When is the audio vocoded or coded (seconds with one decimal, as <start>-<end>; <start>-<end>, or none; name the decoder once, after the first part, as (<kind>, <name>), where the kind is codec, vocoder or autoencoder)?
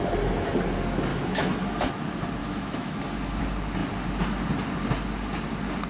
1.1-1.9 (autoencoder, DAC-VAE); 2.4-3.4